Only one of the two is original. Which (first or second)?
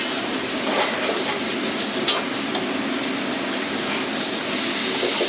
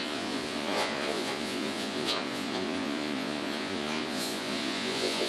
first